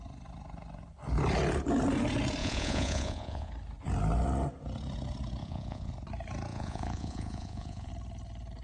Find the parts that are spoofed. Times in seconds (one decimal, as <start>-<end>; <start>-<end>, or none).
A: 2.4-3.5; 5.4-5.9; 6.5-7.9